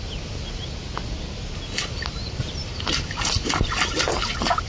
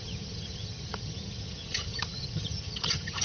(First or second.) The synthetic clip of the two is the second